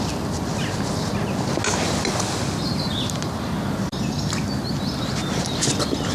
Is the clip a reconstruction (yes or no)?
no